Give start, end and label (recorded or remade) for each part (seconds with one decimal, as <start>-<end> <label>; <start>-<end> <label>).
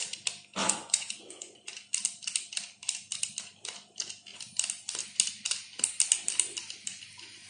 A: 0.0-0.6 recorded; 0.6-1.7 remade; 1.7-7.5 recorded